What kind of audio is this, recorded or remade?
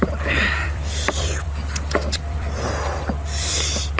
remade